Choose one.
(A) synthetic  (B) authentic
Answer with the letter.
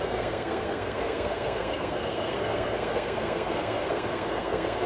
A